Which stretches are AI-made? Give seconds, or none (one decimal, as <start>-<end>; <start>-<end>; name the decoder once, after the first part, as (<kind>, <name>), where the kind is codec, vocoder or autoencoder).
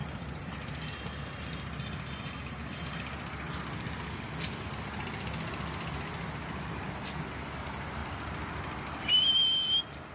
0.0-0.9 (vocoder, BigVGAN v2); 8.0-9.1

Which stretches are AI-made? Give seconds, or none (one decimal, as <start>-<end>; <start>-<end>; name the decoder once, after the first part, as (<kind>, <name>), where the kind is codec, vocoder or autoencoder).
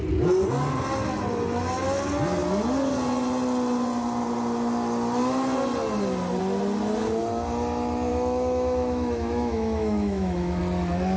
8.1-10.6 (autoencoder, DAC-VAE)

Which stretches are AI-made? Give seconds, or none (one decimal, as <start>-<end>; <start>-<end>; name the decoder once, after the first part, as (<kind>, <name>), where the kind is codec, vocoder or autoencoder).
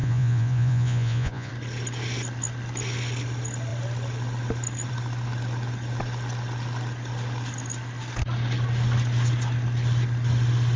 0.0-1.5 (vocoder, Vocos)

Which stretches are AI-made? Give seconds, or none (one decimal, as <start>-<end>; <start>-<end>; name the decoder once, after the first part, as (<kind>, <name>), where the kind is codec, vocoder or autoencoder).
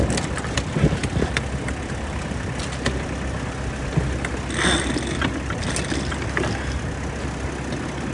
1.0-2.6 (vocoder, BigVGAN v2)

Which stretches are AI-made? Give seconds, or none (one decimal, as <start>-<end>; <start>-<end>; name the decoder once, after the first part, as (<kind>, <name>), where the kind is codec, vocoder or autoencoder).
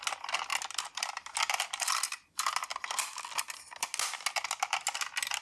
none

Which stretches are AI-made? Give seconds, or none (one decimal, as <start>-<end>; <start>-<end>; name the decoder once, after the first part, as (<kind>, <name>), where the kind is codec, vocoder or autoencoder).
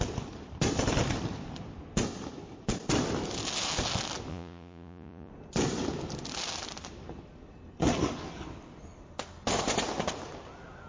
4.3-5.3 (vocoder, Vocos)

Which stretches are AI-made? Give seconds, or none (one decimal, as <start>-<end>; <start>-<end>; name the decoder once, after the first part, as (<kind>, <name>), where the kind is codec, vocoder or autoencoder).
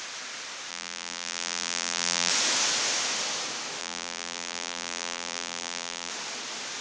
0.7-2.3 (vocoder, BigVGAN v2); 3.8-6.1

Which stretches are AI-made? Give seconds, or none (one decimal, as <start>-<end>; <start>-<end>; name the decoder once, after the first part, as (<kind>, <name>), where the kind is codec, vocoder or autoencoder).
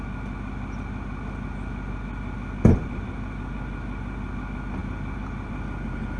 none